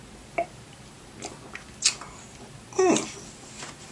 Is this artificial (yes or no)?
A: no